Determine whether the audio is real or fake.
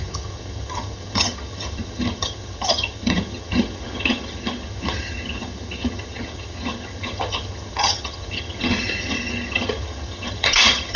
fake